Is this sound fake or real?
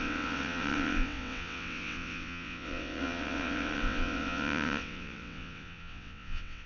fake